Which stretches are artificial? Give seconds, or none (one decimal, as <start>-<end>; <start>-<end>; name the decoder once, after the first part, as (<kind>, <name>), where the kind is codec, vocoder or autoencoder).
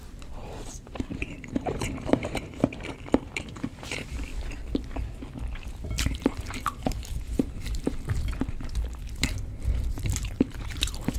0.0-4.3 (vocoder, BigVGAN v2); 6.1-11.2